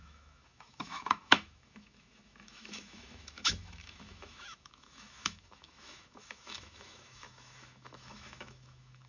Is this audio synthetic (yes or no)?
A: yes